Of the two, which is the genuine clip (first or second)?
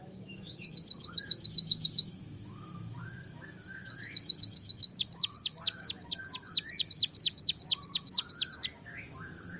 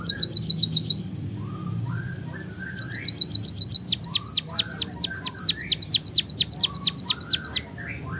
second